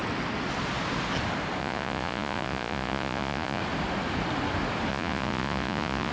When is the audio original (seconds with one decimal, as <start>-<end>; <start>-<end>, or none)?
0.0-1.6; 3.6-4.9